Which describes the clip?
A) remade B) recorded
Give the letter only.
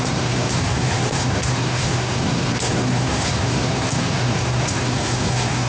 A